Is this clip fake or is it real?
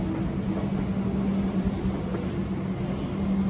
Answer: real